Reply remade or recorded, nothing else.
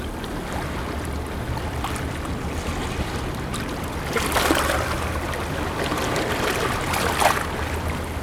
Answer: recorded